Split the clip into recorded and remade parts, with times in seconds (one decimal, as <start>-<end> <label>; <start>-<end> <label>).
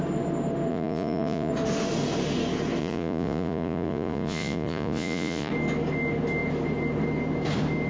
0.0-0.7 recorded; 0.7-1.5 remade; 1.5-2.8 recorded; 2.8-5.5 remade; 5.5-7.9 recorded